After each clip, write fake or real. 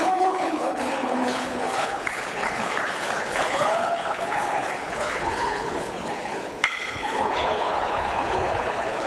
fake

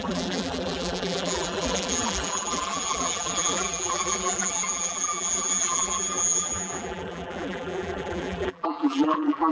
fake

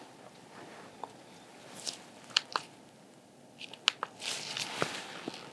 real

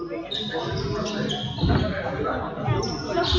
real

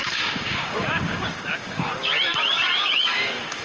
fake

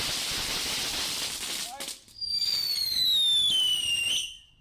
real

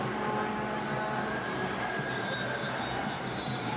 real